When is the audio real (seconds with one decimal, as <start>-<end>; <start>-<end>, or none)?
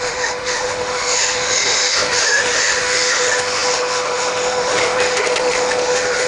none